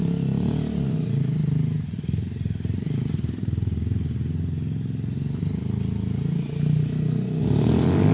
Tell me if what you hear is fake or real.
real